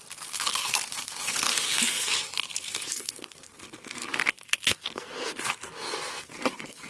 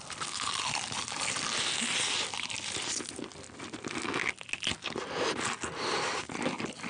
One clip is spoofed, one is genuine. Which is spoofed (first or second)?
first